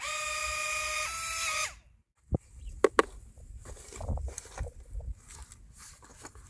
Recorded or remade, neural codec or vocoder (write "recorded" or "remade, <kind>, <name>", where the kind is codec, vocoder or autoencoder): recorded